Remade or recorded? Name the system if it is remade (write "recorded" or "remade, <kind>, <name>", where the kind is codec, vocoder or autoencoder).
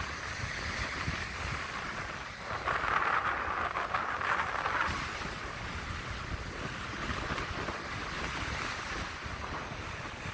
recorded